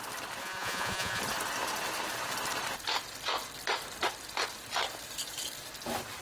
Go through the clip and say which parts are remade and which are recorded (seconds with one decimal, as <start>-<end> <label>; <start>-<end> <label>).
0.0-0.4 recorded; 0.4-1.2 remade; 1.2-6.2 recorded